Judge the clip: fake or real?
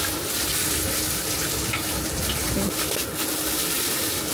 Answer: real